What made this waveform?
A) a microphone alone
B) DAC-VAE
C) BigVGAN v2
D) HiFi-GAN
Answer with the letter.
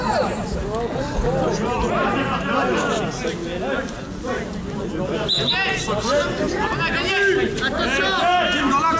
A